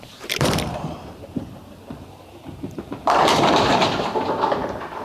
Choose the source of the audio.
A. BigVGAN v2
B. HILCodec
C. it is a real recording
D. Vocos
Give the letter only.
A